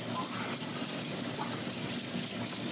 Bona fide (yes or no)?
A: yes